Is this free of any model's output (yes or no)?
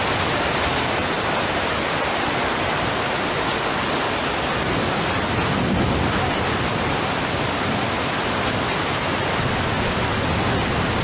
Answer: yes